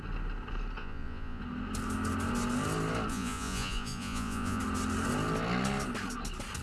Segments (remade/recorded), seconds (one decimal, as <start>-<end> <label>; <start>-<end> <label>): 0.0-0.8 recorded; 0.8-1.4 remade; 1.4-3.1 recorded; 3.1-4.6 remade; 4.6-6.6 recorded